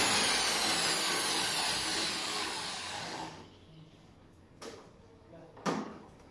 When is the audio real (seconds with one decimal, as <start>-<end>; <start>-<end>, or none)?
0.0-2.2